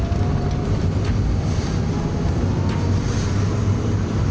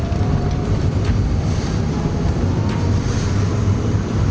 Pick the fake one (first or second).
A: second